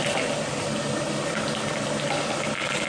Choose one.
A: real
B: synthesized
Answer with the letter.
A